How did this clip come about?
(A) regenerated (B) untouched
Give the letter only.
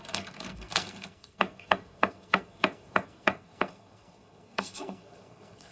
A